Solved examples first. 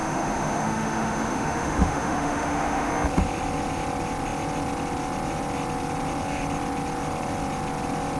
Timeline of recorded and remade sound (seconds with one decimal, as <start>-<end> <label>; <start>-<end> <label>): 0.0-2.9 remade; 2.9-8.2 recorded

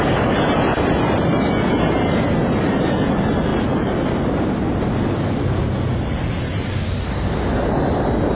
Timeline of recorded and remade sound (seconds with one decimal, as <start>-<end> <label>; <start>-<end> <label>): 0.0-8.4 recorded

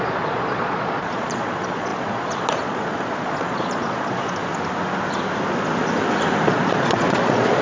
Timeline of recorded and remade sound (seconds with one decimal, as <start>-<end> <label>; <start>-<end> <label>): 0.0-4.5 remade; 4.5-6.5 recorded; 6.5-7.6 remade

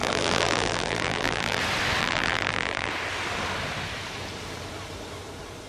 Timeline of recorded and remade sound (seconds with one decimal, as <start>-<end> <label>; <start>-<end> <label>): 0.0-1.6 remade; 1.6-2.0 recorded; 2.0-2.9 remade; 2.9-5.7 recorded